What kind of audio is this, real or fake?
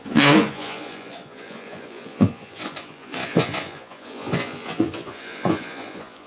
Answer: fake